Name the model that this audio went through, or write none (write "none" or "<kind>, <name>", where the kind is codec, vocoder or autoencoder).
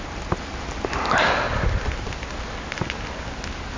none